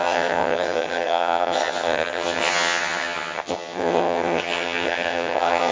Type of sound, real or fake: fake